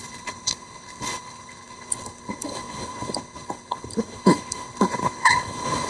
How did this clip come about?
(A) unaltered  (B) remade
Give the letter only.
B